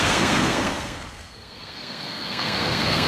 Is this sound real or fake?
fake